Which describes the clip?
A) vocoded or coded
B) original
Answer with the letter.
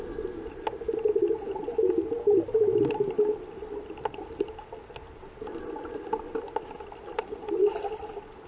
B